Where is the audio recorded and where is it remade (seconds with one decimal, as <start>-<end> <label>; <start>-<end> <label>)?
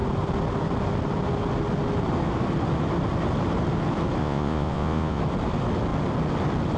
0.0-4.2 recorded; 4.2-5.2 remade; 5.2-6.8 recorded